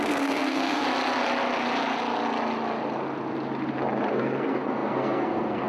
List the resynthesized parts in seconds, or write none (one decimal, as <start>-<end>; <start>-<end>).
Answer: 0.0-0.8; 4.2-5.7